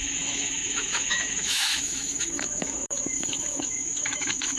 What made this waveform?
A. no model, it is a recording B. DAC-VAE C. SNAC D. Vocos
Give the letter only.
B